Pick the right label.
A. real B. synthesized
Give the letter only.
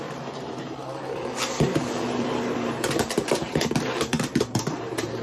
B